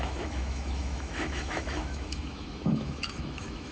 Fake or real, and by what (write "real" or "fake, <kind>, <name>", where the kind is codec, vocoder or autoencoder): fake, autoencoder, DAC-VAE